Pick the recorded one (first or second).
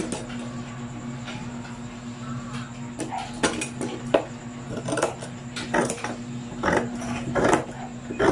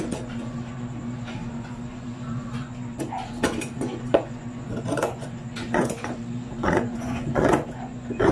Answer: first